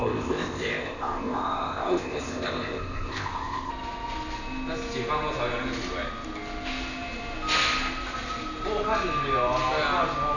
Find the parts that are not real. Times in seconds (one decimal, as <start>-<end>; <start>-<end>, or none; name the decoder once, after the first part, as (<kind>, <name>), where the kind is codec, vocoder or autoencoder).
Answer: 0.0-3.7 (codec, ZipCodec)